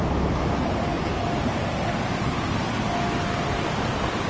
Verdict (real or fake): real